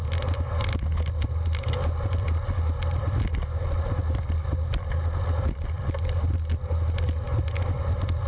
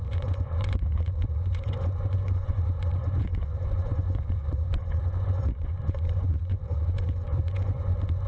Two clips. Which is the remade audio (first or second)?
second